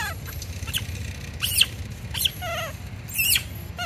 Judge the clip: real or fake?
real